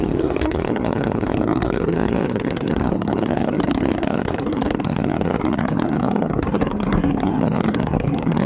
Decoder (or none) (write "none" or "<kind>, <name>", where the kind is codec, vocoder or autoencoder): codec, SNAC